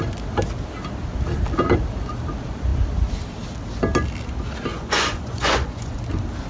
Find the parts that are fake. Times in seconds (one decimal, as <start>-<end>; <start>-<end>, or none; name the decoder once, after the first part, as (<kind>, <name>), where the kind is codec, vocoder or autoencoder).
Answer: 4.7-6.0 (vocoder, Vocos)